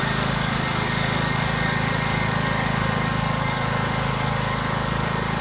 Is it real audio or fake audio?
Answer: fake